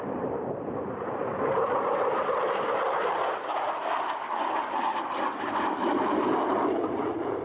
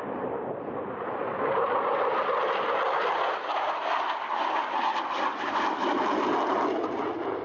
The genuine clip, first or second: second